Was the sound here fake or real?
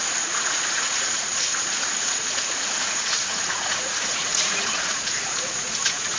fake